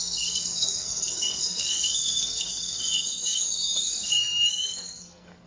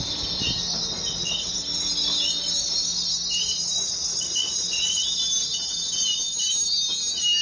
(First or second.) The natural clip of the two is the second